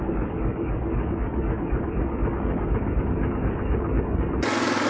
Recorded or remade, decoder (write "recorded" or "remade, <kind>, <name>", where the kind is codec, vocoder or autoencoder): remade, codec, DAC